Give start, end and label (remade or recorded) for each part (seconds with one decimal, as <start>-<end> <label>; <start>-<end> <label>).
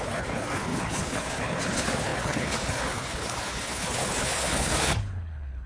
0.0-5.7 remade